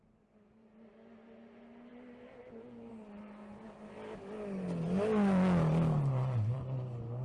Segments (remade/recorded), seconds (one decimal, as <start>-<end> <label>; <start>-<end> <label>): 0.0-7.2 recorded